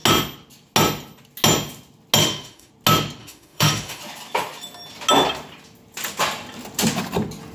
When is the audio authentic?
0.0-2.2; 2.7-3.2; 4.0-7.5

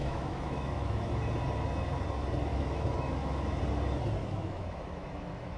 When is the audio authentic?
1.1-2.5; 3.6-4.2

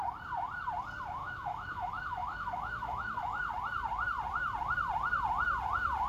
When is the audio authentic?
0.0-1.2; 3.5-6.1

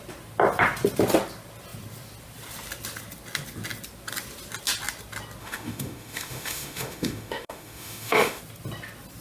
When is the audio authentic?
0.0-5.4; 8.4-9.2

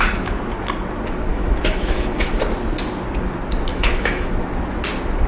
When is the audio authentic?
0.0-1.3; 2.3-3.7; 4.3-5.3

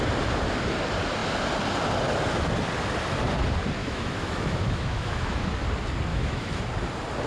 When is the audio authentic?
0.0-3.8; 5.4-6.1; 6.6-7.3

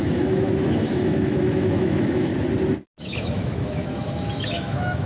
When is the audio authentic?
2.3-3.0

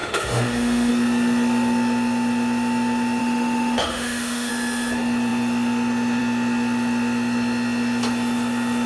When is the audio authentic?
0.9-3.2; 4.5-8.9